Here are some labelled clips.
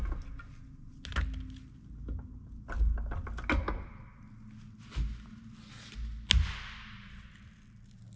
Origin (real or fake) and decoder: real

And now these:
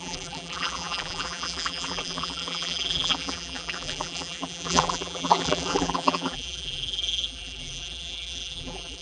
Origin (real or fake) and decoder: fake, vocoder, BigVGAN v2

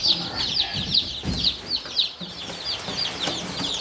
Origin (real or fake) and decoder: real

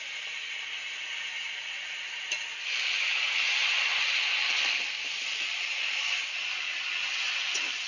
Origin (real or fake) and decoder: real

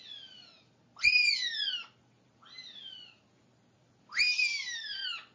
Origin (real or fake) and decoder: real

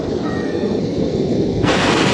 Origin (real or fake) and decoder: fake, codec, SNAC